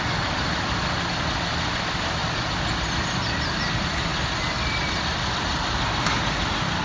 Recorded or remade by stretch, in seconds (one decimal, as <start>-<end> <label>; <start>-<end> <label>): 0.0-6.8 recorded